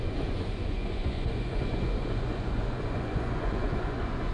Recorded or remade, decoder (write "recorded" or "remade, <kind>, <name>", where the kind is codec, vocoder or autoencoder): remade, vocoder, Vocos